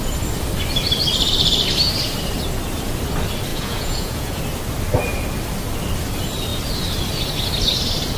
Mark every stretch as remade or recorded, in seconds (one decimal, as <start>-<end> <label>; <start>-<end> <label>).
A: 0.0-3.5 recorded; 3.5-4.4 remade; 4.4-8.2 recorded